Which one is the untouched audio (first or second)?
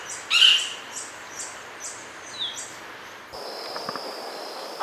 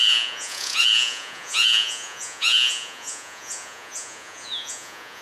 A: first